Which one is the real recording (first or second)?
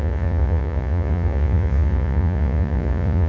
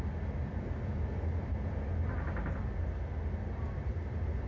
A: second